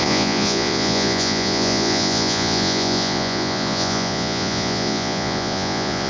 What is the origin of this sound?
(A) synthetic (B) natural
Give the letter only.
A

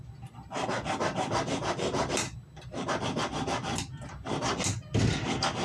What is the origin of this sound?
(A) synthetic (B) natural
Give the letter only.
B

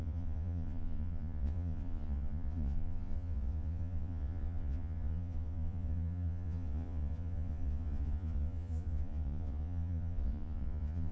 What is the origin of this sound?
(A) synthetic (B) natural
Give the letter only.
A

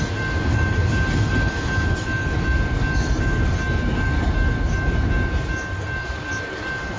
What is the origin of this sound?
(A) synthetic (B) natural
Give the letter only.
B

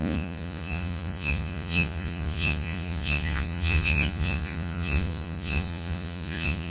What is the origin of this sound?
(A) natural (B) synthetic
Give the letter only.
B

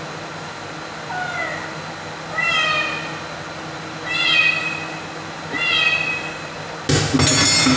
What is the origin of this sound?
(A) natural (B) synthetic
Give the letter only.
A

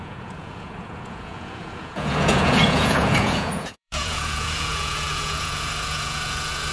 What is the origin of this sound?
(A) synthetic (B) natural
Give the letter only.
A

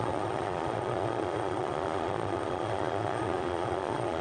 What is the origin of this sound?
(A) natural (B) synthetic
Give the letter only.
B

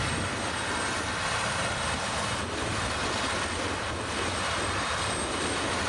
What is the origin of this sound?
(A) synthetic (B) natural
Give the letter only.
B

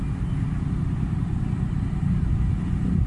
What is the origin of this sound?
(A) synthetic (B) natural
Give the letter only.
B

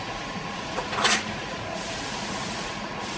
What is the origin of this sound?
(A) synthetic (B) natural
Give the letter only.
A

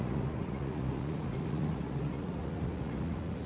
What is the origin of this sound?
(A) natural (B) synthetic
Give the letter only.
B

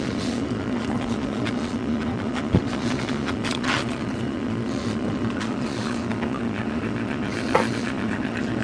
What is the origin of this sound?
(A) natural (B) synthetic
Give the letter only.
B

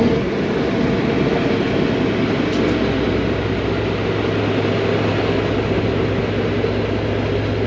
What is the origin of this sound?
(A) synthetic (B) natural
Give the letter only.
B